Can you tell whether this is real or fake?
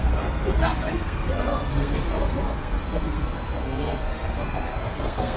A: fake